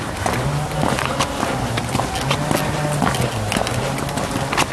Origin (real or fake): real